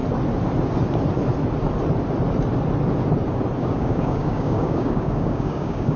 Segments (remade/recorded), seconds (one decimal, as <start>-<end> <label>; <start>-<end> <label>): 0.0-3.6 recorded; 3.6-6.0 remade